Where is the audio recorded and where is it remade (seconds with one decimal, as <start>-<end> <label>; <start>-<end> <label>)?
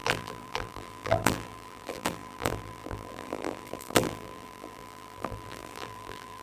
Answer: 0.0-6.4 remade